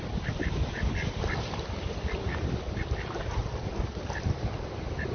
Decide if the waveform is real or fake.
real